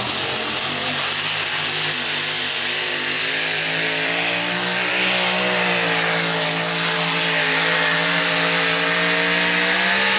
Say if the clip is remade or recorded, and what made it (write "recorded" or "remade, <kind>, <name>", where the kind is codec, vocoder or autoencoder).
recorded